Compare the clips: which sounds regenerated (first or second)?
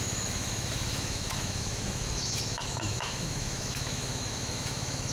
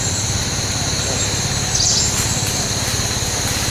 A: first